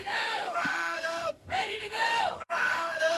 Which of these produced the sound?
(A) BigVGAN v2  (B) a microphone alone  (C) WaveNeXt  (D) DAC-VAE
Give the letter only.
D